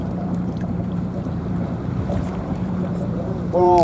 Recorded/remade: remade